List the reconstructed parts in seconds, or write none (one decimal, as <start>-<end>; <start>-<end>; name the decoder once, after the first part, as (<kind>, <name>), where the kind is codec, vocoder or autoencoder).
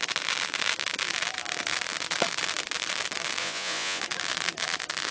3.4-4.0 (vocoder, Vocos)